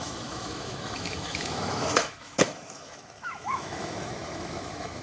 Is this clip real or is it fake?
fake